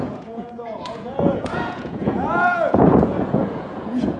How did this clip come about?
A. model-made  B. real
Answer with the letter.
A